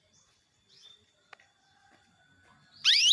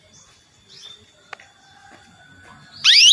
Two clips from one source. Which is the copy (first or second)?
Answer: first